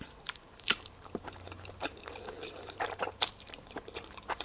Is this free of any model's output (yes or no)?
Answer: no